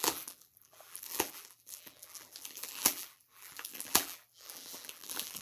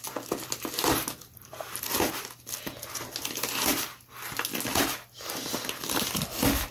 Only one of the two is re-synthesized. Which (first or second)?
first